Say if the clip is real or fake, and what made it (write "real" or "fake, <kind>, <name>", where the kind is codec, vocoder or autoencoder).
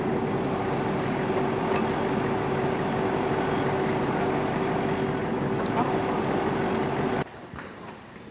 real